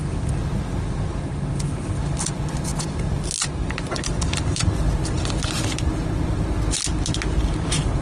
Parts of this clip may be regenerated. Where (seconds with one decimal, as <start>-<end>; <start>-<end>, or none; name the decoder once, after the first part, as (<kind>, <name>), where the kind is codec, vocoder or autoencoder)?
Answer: none